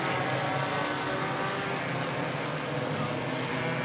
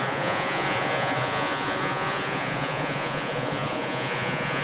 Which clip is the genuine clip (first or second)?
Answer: first